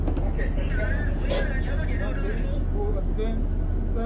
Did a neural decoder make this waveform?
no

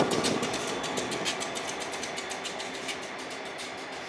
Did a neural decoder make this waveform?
no